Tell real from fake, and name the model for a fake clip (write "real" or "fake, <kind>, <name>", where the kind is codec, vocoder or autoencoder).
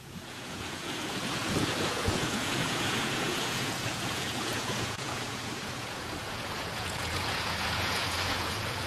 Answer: fake, vocoder, Vocos